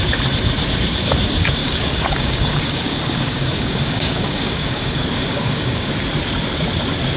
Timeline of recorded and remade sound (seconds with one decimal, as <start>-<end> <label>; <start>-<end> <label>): 0.0-1.6 recorded; 1.6-5.9 remade; 5.9-7.2 recorded